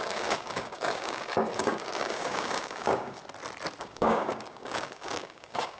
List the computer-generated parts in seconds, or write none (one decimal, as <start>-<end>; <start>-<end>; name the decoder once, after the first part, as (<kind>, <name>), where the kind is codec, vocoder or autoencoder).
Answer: 0.0-3.2 (codec, DAC); 3.8-5.8